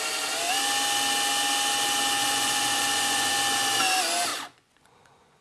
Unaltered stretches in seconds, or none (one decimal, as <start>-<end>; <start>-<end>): 0.0-2.2; 3.3-4.3